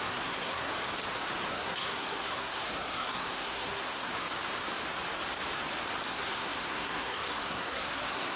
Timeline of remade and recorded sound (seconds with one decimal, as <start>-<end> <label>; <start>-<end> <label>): 0.0-0.7 remade; 0.7-1.5 recorded; 1.5-4.1 remade; 4.1-6.1 recorded; 6.1-8.4 remade